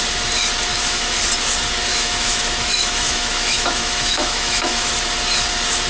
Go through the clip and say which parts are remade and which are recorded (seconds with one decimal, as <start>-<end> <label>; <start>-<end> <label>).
0.0-0.7 recorded; 0.7-1.2 remade; 1.2-1.9 recorded; 1.9-4.9 remade; 4.9-5.9 recorded